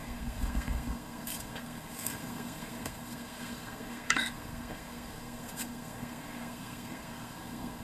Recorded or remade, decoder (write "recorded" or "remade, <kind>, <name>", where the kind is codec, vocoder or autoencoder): remade, codec, SNAC